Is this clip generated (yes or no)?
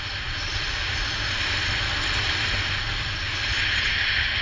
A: no